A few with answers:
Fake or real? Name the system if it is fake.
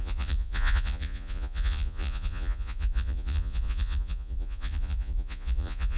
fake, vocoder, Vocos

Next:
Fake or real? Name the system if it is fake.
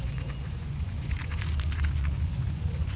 fake, vocoder, Vocos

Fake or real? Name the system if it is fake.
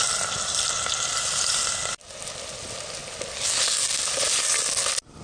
real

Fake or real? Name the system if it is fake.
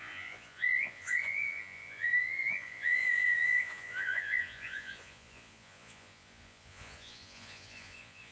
fake, vocoder, Vocos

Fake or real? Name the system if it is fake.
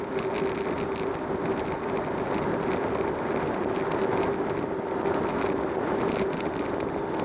real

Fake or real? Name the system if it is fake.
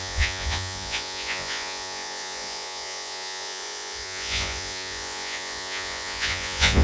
fake, vocoder, Vocos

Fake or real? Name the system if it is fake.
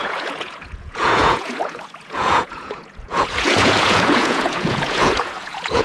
fake, vocoder, Vocos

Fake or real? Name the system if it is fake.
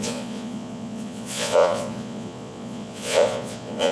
fake, vocoder, Vocos